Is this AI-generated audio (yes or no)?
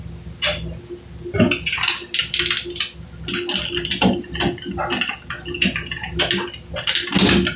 no